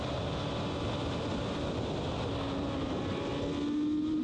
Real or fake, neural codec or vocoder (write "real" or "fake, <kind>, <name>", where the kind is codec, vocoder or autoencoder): real